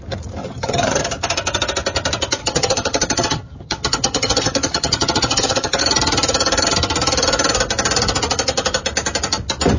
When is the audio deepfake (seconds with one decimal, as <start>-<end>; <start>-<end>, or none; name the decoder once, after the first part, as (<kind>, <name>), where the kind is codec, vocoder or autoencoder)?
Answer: 0.4-1.0 (vocoder, HiFi-GAN); 2.4-5.8